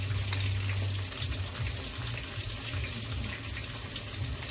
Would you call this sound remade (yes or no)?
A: no